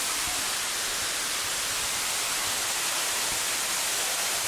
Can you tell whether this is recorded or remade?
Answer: recorded